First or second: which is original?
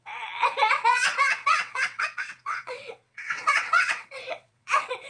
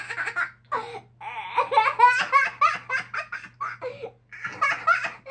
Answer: second